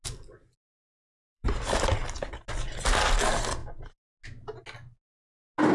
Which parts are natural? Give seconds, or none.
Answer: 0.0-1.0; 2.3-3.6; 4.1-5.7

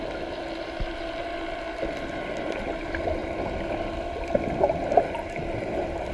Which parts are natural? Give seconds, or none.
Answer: none

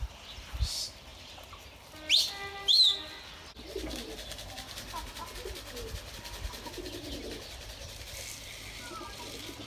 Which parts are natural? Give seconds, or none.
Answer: 0.0-9.7